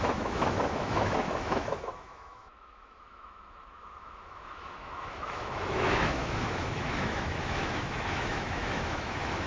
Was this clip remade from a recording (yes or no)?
yes